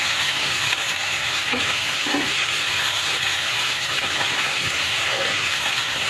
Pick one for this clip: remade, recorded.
remade